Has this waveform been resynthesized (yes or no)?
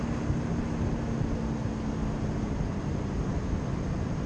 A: no